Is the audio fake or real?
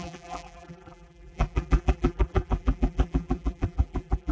fake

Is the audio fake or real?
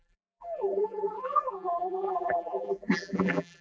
fake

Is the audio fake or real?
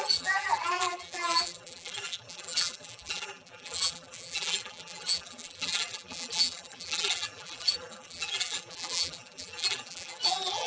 fake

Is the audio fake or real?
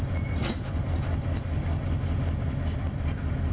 fake